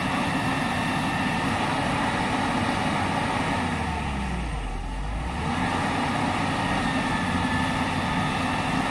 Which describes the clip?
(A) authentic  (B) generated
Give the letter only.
A